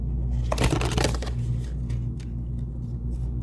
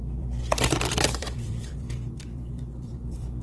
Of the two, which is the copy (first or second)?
second